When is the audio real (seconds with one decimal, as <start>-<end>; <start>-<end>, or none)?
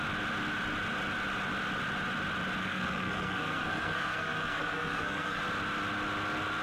0.0-2.6; 5.4-6.6